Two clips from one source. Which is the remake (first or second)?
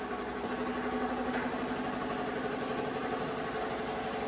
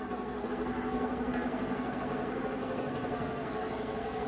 second